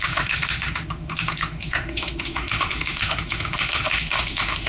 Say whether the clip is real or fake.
fake